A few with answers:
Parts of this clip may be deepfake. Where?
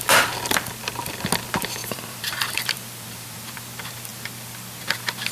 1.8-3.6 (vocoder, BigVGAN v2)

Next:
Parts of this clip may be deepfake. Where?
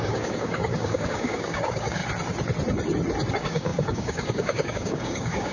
0.0-2.0 (codec, DAC); 3.3-5.5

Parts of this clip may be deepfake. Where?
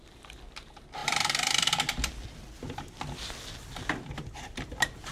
none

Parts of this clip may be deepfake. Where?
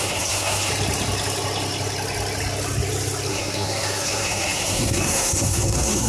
0.0-0.7 (codec, SNAC); 3.3-6.1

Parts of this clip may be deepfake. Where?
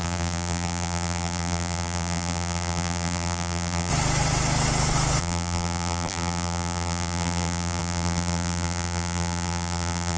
0.0-3.9 (vocoder, BigVGAN v2); 5.2-10.2